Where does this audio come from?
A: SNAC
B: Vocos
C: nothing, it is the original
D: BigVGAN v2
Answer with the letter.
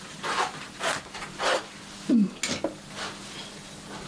C